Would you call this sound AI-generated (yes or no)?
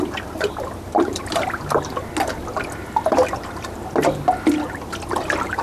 no